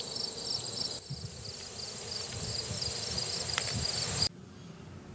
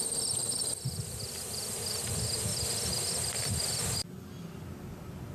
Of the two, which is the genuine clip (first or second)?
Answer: second